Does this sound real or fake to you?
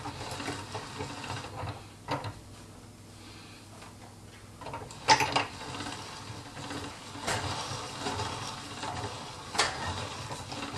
real